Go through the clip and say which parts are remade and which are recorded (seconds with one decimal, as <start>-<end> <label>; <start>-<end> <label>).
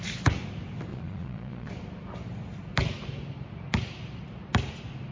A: 0.0-0.9 recorded; 0.9-1.7 remade; 1.7-5.1 recorded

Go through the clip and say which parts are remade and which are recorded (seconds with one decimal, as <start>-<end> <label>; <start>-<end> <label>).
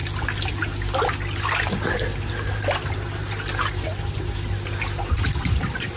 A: 0.0-2.3 recorded; 2.3-3.9 remade; 3.9-5.5 recorded; 5.5-6.0 remade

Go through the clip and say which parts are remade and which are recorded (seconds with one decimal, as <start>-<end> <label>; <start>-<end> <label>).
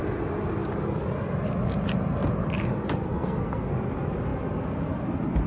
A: 0.0-3.1 recorded; 3.1-3.7 remade; 3.7-5.5 recorded